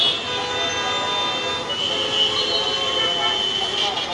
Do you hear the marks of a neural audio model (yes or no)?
no